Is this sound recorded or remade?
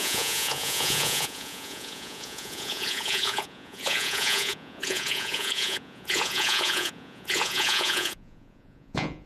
remade